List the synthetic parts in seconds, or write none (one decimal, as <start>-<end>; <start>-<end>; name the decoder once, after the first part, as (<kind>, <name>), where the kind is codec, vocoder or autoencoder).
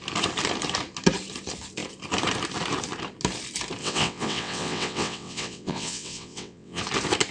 3.8-6.8 (vocoder, WaveNeXt)